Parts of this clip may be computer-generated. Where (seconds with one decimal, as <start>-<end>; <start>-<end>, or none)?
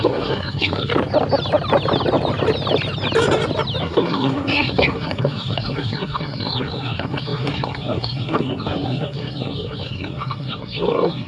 0.0-0.9; 3.8-11.3